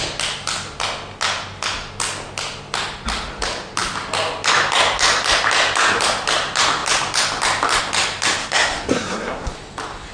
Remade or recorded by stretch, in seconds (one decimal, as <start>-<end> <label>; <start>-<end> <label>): 0.0-8.4 recorded; 8.4-9.5 remade; 9.5-10.1 recorded

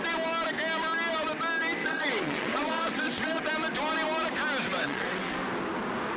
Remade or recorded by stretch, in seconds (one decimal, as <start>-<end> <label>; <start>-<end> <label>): 0.0-1.8 recorded; 1.8-3.5 remade; 3.5-4.7 recorded; 4.7-5.3 remade; 5.3-6.2 recorded

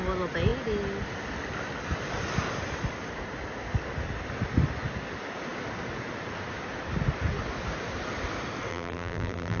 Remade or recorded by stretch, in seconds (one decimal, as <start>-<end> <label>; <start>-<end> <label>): 0.0-8.7 recorded; 8.7-9.6 remade

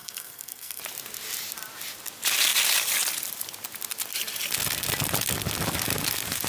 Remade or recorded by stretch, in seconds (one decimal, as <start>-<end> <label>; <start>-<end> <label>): 0.0-0.8 remade; 0.8-6.5 recorded